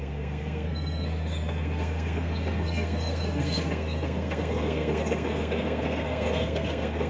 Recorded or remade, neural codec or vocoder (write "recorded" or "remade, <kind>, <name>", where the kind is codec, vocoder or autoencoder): remade, codec, SNAC